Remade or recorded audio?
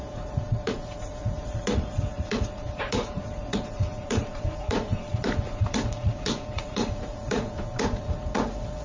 remade